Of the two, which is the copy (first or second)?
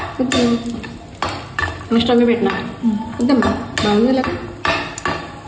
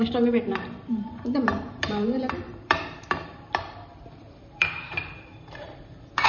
second